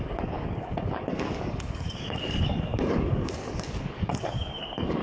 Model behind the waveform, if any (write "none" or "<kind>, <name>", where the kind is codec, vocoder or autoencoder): codec, DAC